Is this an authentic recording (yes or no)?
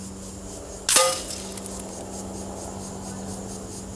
yes